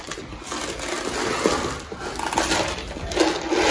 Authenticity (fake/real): real